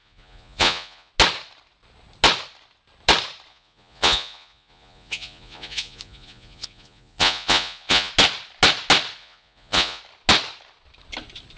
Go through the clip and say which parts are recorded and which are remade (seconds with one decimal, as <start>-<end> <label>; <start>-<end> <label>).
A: 0.0-1.1 remade; 1.1-3.5 recorded; 3.5-8.1 remade; 8.1-9.2 recorded; 9.2-10.0 remade; 10.0-11.6 recorded